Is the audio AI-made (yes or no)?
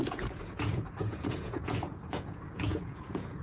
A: yes